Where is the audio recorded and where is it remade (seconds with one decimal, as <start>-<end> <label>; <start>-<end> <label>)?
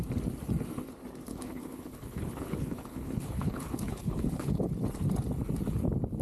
0.0-1.3 recorded; 1.3-4.7 remade; 4.7-6.2 recorded